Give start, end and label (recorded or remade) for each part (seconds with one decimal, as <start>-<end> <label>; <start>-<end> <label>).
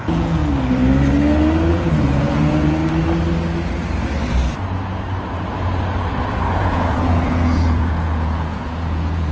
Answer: 0.0-0.4 remade; 0.4-1.7 recorded; 1.7-2.8 remade; 2.8-6.6 recorded; 6.6-9.3 remade